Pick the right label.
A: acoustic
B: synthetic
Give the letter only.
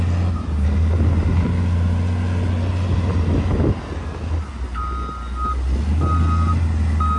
A